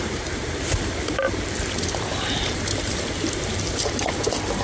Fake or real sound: fake